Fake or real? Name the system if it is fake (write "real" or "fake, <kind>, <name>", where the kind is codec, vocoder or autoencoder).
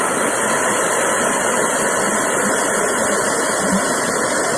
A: real